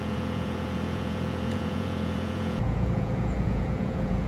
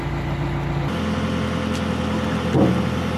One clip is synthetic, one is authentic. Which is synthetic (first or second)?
first